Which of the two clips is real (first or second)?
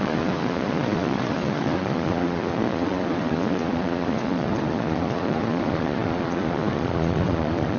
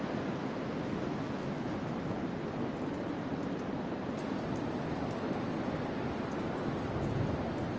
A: second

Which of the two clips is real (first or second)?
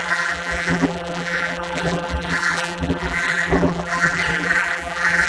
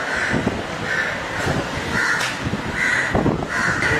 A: second